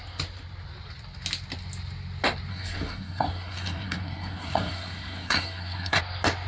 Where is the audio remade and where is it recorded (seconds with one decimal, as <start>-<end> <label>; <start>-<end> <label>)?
0.0-2.5 recorded; 2.5-6.0 remade; 6.0-6.5 recorded